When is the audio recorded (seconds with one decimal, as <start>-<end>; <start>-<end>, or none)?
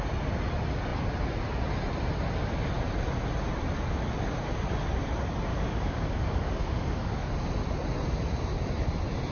0.0-5.5; 7.3-9.3